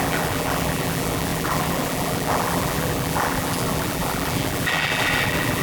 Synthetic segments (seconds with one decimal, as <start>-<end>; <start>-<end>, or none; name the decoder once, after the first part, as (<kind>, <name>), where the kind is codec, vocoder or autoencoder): 0.0-5.6 (vocoder, BigVGAN v2)